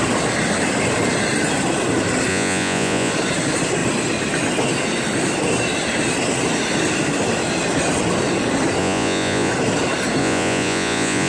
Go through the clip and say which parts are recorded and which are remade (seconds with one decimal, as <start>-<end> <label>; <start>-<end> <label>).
0.0-2.3 recorded; 2.3-3.1 remade; 3.1-8.8 recorded; 8.8-9.5 remade; 9.5-10.2 recorded; 10.2-11.3 remade